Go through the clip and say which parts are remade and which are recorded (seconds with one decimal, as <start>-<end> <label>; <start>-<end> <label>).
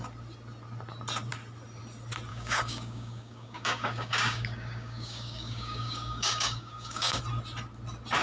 0.0-2.3 recorded; 2.3-7.2 remade; 7.2-8.2 recorded